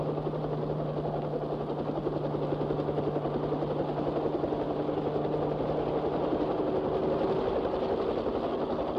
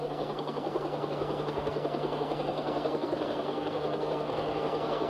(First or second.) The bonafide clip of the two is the first